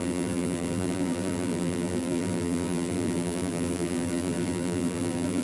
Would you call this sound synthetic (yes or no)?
yes